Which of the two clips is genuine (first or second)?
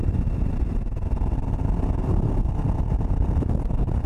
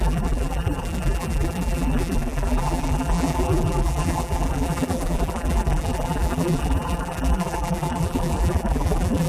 first